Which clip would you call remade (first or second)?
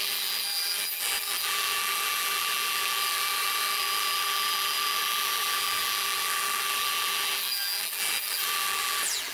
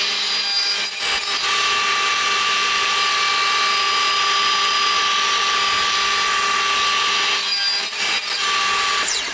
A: first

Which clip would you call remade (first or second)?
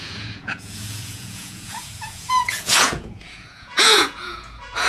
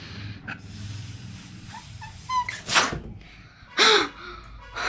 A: first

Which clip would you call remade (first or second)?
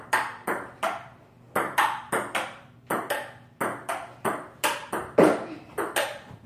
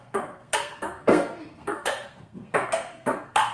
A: second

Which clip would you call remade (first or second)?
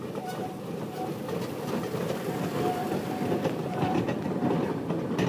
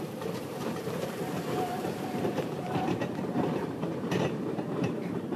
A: second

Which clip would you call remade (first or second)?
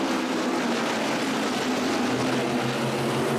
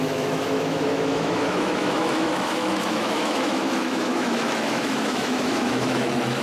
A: second